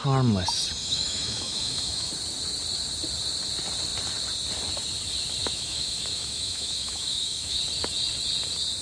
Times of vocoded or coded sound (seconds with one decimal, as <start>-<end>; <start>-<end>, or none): 0.8-2.1; 5.4-7.6